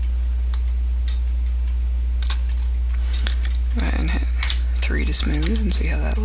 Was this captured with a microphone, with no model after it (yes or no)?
yes